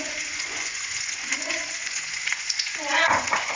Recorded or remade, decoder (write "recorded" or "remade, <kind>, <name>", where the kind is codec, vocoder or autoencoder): remade, vocoder, Vocos